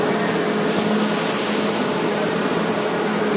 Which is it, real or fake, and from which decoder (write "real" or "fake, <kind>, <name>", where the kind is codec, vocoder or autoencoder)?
real